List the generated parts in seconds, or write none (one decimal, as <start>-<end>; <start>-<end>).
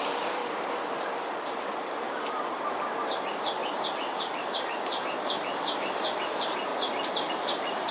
0.0-0.4; 1.2-3.6; 4.4-6.7; 7.3-7.9